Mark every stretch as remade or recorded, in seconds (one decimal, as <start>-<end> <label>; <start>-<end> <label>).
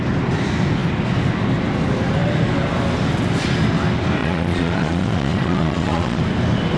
0.0-4.2 recorded; 4.2-6.2 remade; 6.2-6.8 recorded